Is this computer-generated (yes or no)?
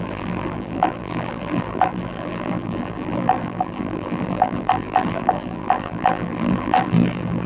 yes